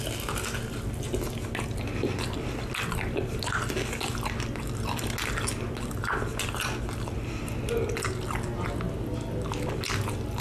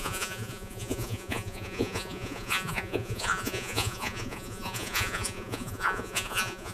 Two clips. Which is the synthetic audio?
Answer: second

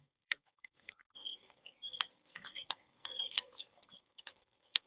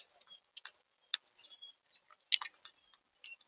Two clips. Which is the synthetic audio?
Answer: first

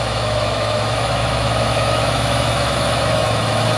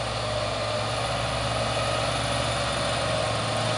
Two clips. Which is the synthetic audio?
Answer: first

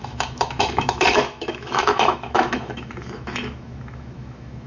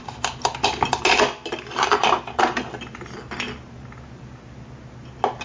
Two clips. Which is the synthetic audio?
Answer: first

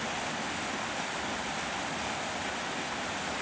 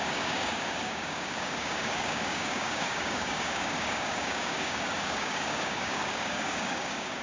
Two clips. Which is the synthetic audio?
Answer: second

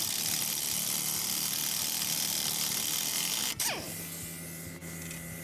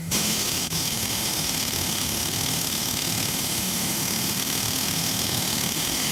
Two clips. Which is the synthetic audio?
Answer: second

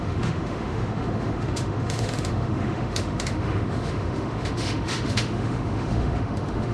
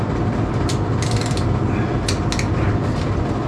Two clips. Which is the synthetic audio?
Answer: first